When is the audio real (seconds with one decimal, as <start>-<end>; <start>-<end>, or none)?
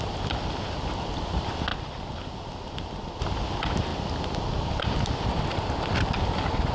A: 0.0-1.7; 3.2-6.7